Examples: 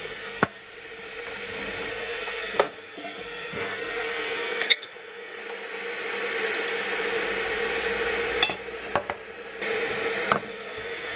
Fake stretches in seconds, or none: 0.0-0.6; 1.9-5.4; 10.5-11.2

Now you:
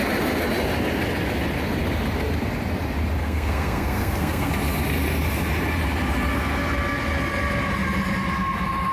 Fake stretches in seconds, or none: 3.2-4.5

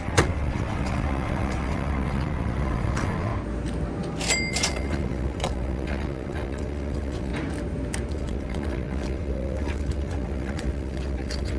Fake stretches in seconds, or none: 0.0-3.3; 4.5-7.3; 8.1-11.6

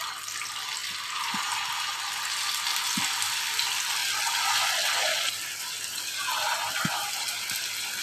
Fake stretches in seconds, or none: none

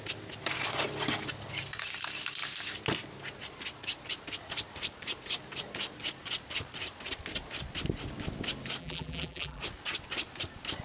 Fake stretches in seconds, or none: 8.8-9.6

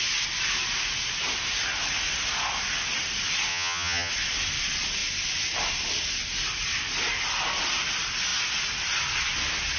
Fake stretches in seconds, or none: 3.5-4.1

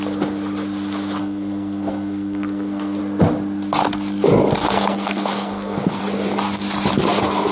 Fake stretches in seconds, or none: 1.2-3.0; 4.6-6.0

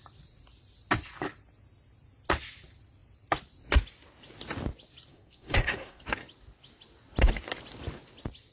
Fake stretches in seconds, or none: 5.1-6.0